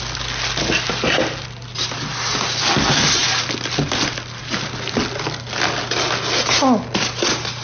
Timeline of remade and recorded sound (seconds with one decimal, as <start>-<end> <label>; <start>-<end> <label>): 0.0-7.6 recorded